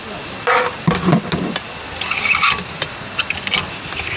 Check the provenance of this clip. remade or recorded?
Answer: recorded